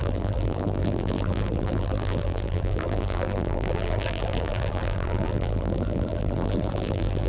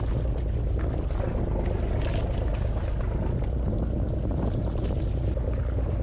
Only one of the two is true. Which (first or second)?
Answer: second